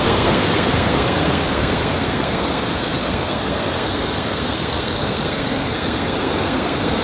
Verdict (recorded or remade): remade